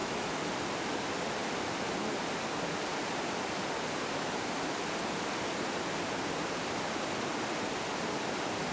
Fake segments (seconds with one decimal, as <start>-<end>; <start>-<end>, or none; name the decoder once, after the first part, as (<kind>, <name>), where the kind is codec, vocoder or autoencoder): 0.0-0.5 (autoencoder, DAC-VAE)